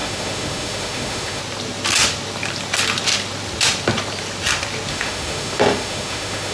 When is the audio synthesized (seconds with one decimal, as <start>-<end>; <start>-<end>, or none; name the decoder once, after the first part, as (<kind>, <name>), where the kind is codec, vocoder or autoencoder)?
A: 0.0-1.4 (autoencoder, DAC-VAE); 4.9-6.5